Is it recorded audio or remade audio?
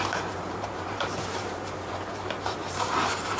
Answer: remade